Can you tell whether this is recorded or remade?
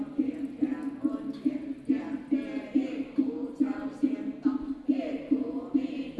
recorded